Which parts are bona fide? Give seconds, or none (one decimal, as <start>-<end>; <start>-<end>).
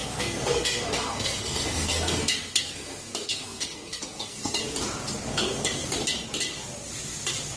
4.6-5.3; 5.9-7.6